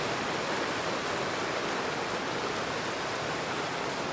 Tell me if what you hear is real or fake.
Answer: real